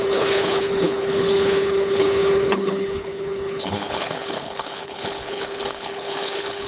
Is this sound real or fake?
fake